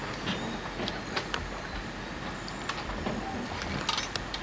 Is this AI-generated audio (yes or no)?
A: no